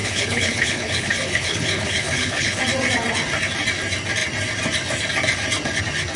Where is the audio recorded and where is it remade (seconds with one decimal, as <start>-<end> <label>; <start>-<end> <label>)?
0.0-2.6 remade; 2.6-6.2 recorded